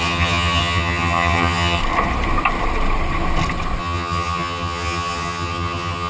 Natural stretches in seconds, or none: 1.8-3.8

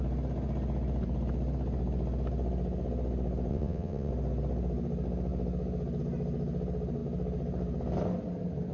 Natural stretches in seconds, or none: 0.0-3.5; 4.1-8.7

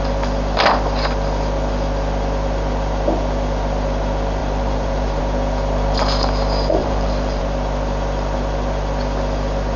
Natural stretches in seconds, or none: 0.0-4.4; 5.2-6.8; 7.4-9.8